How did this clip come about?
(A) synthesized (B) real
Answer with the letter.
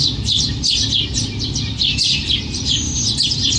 B